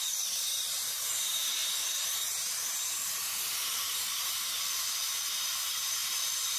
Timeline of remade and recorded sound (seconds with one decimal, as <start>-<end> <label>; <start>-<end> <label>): 0.0-6.6 remade

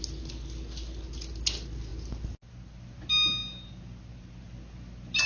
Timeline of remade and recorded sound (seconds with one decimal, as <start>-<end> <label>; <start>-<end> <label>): 0.0-5.3 recorded

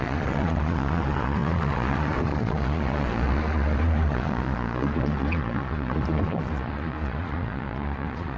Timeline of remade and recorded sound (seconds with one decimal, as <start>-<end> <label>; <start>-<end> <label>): 0.0-8.4 remade